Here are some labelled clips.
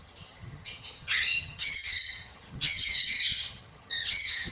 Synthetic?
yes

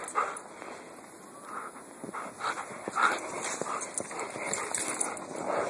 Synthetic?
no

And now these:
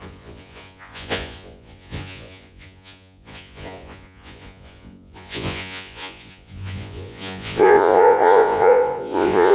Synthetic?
yes